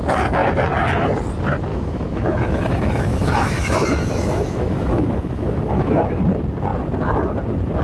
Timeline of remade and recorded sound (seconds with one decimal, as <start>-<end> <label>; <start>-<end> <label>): 0.0-1.7 recorded; 1.7-6.2 remade; 6.2-7.8 recorded